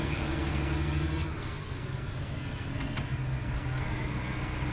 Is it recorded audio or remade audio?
remade